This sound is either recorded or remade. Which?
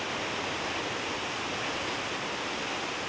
recorded